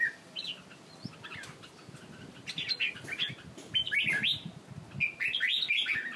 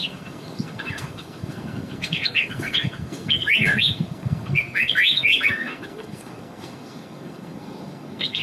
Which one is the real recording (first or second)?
first